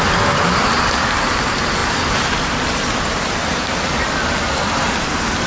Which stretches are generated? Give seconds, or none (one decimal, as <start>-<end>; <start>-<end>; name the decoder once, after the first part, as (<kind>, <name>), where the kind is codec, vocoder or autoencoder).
none